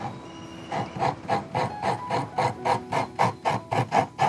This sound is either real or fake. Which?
real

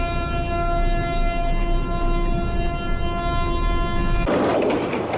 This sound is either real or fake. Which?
real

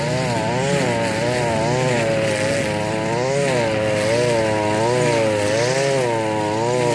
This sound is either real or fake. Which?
real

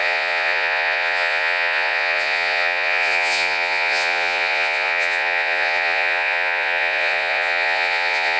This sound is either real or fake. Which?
fake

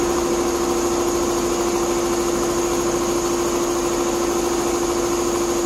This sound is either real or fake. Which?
real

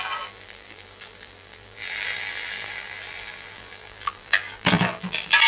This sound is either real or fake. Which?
fake